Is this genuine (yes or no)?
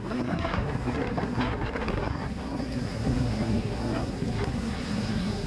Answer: no